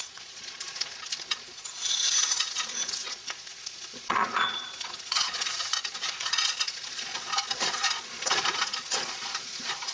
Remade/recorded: remade